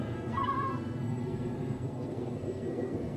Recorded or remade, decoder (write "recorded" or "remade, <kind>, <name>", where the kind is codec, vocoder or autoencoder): remade, codec, SNAC